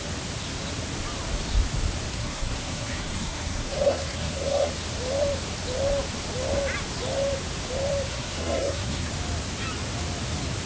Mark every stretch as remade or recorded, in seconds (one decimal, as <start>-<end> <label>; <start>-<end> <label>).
0.0-2.1 recorded; 2.1-4.7 remade; 4.7-8.1 recorded; 8.1-9.1 remade; 9.1-10.7 recorded